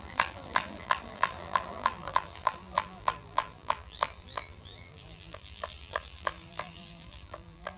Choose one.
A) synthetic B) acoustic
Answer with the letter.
A